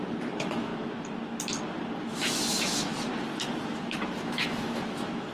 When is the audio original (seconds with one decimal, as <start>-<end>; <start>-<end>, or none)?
0.7-2.0; 3.1-3.7